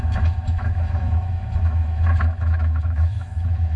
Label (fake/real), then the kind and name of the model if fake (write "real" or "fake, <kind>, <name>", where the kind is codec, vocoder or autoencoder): fake, autoencoder, DAC-VAE